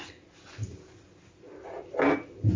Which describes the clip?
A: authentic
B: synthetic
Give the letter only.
A